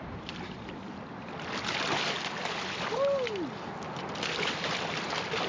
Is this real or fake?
real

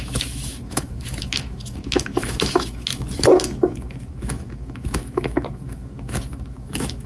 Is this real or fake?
fake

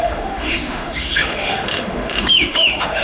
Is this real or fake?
fake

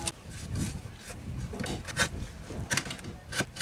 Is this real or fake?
real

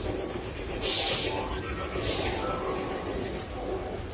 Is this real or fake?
real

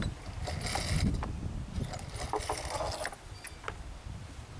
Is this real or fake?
real